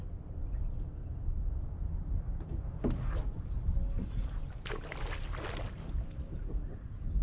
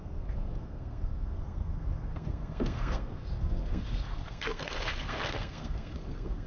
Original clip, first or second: first